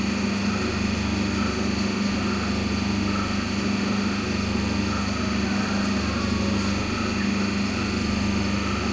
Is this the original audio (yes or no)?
yes